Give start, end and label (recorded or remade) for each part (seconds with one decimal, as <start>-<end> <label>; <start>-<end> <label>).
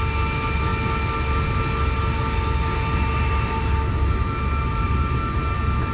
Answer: 0.0-5.9 recorded